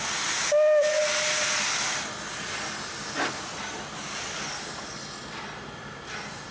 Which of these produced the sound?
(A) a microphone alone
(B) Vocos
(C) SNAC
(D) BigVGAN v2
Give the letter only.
A